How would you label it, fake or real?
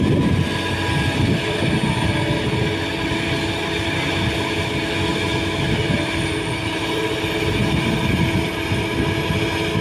real